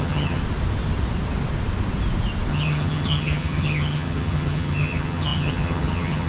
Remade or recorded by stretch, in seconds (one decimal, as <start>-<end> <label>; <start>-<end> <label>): 0.0-0.4 remade; 0.4-2.5 recorded; 2.5-6.3 remade